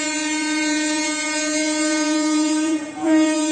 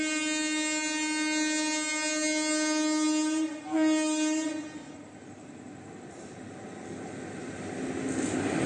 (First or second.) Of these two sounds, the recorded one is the second